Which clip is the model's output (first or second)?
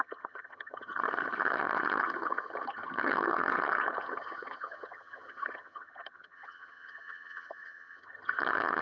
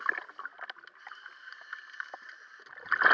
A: first